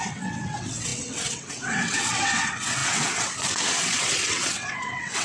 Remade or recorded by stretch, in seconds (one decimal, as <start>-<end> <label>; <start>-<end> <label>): 0.0-5.2 remade